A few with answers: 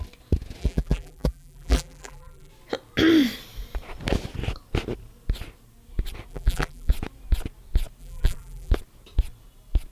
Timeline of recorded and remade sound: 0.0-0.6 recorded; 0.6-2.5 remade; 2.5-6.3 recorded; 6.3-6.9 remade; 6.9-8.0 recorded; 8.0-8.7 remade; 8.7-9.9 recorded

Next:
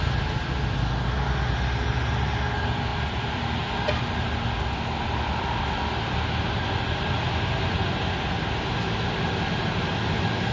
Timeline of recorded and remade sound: 0.0-2.9 recorded; 2.9-3.6 remade; 3.6-10.5 recorded